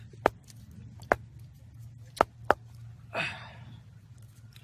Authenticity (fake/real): real